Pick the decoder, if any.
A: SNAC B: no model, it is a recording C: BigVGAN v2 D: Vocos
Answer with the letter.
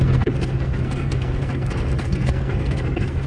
A